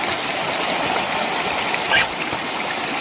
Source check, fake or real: real